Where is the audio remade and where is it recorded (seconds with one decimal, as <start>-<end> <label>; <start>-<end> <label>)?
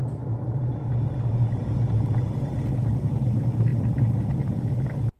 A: 0.0-5.2 recorded